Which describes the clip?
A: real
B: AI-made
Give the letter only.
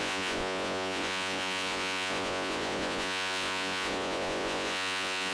B